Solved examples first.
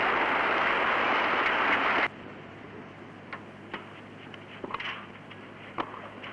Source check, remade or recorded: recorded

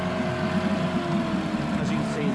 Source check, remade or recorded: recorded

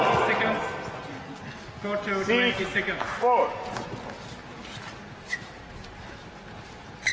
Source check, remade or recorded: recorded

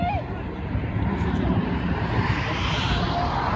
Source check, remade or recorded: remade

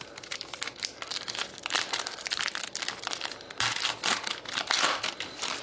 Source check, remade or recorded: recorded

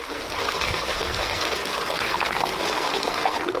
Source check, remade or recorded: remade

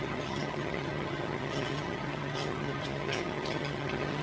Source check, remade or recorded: remade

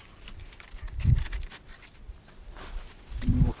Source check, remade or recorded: remade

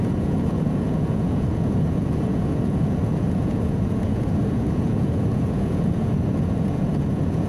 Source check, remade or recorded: remade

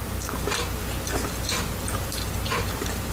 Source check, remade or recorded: recorded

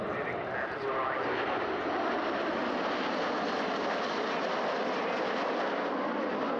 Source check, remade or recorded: recorded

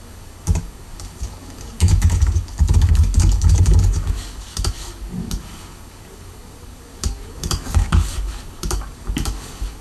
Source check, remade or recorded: remade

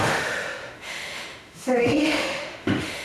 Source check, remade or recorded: remade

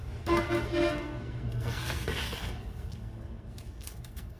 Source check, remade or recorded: remade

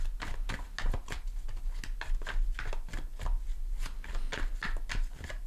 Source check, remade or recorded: recorded